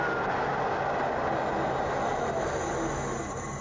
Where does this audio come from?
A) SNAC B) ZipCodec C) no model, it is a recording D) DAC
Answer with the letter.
C